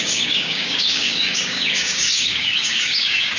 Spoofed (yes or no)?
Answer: yes